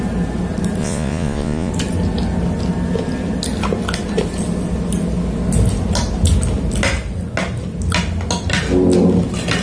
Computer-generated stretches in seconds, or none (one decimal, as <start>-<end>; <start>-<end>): 0.8-1.7